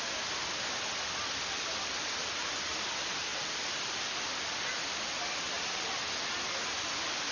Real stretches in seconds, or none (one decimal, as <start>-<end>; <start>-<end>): 0.0-7.3